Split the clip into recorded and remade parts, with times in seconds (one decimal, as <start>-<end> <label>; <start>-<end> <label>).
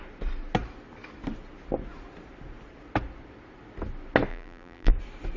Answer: 0.0-4.3 recorded; 4.3-4.9 remade; 4.9-5.4 recorded